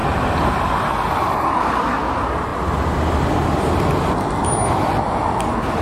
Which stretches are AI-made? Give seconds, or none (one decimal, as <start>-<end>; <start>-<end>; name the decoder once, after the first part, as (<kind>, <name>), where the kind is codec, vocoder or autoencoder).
2.5-5.8 (vocoder, BigVGAN v2)